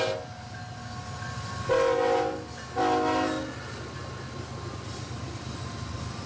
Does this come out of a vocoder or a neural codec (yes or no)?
no